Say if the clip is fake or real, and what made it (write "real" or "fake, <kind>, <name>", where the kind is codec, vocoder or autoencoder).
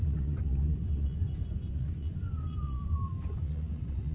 fake, vocoder, Vocos